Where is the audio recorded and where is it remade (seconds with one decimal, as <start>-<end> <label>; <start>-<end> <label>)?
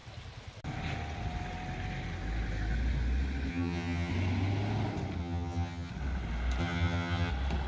0.0-3.5 recorded; 3.5-4.1 remade; 4.1-5.2 recorded; 5.2-5.9 remade; 5.9-6.6 recorded; 6.6-7.3 remade; 7.3-7.7 recorded